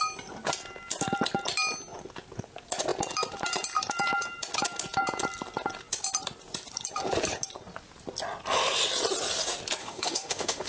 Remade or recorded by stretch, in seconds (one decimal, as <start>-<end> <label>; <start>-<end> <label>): 0.0-9.8 recorded; 9.8-10.7 remade